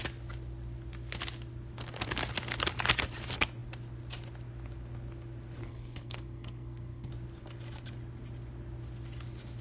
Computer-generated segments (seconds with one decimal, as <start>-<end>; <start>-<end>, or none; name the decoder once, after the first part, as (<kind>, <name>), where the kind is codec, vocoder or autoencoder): 5.6-7.1 (codec, SNAC)